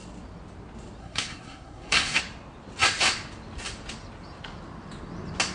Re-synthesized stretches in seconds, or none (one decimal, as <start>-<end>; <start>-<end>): 1.0-2.2